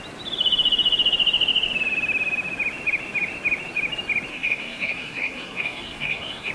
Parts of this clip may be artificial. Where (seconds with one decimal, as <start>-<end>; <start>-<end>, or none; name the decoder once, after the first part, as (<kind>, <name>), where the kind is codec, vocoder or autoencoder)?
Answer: 4.3-6.5 (codec, SNAC)